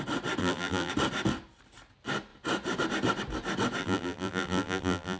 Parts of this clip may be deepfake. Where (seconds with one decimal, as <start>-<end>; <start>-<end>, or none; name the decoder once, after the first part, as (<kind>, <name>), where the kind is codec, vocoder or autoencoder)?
0.4-0.9 (vocoder, BigVGAN v2); 3.8-5.2